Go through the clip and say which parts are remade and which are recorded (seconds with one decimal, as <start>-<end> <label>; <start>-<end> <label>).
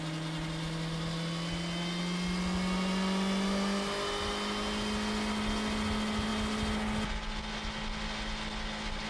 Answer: 0.0-9.1 recorded